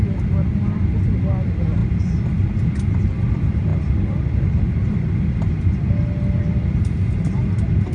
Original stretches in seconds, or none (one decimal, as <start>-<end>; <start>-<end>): 0.0-7.9